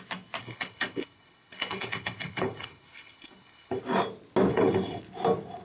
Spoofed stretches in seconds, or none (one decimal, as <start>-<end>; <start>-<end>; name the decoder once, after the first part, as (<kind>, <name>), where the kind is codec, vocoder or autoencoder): 0.4-3.8 (codec, HILCodec); 4.5-5.0